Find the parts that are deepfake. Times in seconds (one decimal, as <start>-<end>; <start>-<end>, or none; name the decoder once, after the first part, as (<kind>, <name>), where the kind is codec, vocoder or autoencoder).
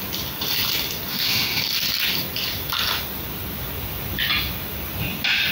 1.1-1.6 (autoencoder, DAC-VAE)